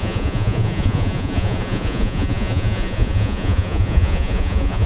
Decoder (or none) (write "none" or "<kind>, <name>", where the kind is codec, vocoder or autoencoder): vocoder, Vocos